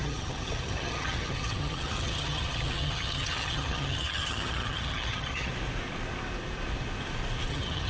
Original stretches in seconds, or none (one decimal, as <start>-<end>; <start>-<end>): 5.5-7.5